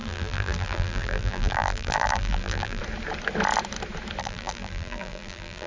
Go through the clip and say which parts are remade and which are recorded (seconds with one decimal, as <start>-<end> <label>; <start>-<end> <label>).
0.0-2.8 remade; 2.8-4.2 recorded; 4.2-5.7 remade